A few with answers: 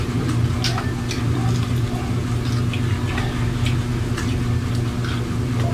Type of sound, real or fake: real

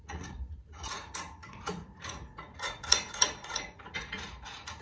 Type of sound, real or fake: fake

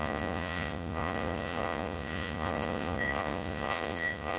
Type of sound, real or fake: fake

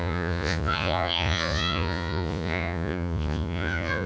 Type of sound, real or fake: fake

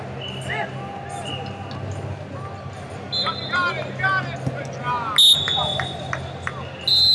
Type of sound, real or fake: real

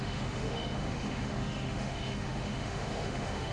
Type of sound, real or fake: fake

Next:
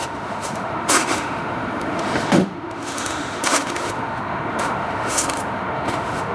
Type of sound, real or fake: fake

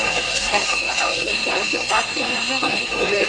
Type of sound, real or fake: fake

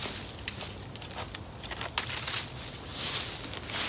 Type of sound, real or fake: real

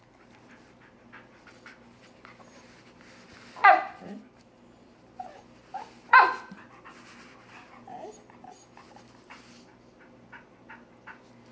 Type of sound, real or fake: real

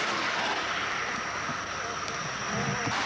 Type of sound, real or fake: real